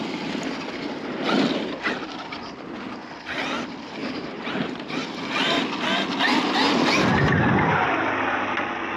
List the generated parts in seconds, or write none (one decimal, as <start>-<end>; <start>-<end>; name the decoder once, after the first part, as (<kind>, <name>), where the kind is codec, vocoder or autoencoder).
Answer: 4.0-5.6 (vocoder, BigVGAN v2)